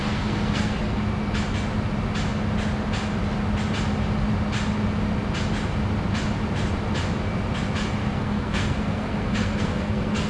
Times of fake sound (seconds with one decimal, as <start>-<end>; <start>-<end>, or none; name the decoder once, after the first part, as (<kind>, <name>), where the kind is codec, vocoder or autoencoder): 0.0-1.0 (codec, SNAC); 8.0-10.3